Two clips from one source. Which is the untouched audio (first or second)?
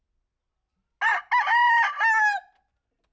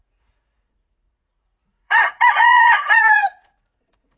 first